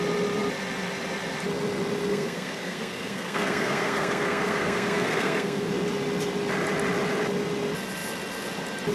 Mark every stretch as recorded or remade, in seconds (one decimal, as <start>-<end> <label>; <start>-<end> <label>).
0.0-2.1 recorded; 2.1-5.7 remade; 5.7-8.9 recorded